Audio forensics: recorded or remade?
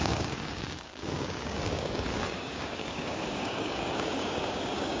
remade